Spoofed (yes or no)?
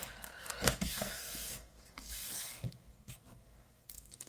yes